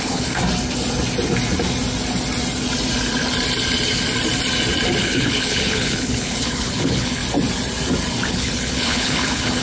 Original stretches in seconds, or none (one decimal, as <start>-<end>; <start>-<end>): 0.4-5.0; 7.2-8.3

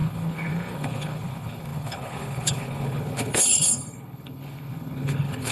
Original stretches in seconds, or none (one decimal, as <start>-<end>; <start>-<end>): none

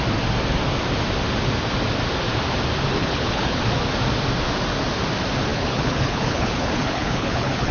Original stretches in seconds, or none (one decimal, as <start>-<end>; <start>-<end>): 0.0-3.0; 3.6-5.5

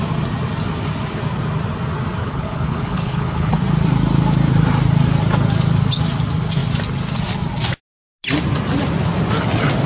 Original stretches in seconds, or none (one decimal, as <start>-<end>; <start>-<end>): 0.0-2.2; 3.6-9.9

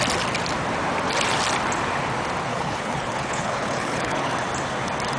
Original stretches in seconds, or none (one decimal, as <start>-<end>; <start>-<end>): 0.0-2.5; 4.3-5.2

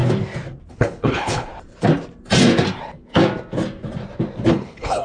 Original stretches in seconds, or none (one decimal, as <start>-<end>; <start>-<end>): 0.0-0.7; 1.5-4.5

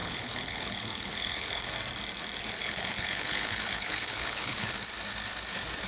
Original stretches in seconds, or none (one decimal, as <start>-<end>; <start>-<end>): 1.7-2.6; 4.8-5.9